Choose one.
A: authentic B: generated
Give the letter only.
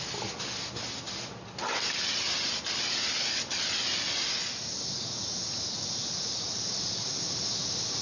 A